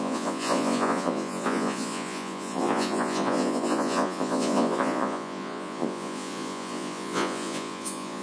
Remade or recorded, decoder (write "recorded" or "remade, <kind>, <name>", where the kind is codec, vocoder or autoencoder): remade, vocoder, Vocos